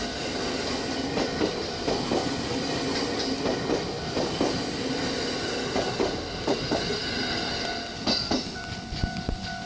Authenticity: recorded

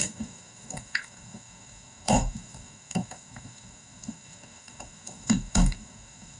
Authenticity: remade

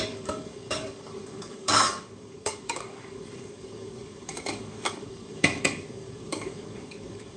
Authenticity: remade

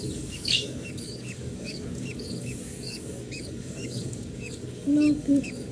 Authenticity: remade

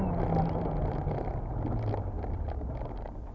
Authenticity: recorded